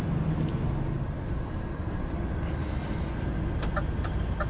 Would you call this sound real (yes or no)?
yes